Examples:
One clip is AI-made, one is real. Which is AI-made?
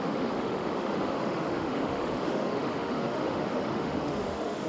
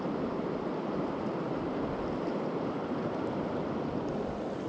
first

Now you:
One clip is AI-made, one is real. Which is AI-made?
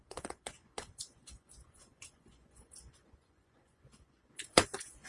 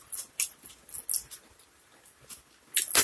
first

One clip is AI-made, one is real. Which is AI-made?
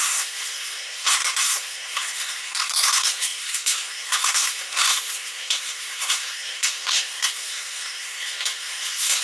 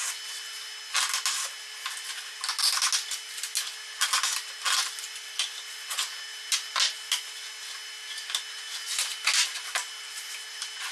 first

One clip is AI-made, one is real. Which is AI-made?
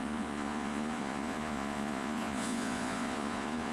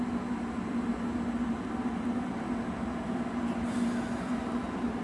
first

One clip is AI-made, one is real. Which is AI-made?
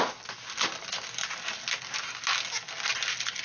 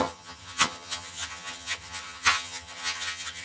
second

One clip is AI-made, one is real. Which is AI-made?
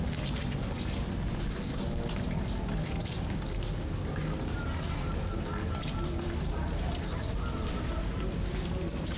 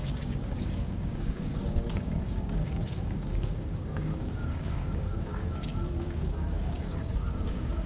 second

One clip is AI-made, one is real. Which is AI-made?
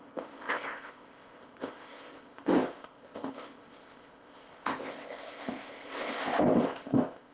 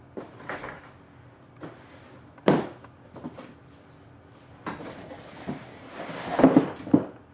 first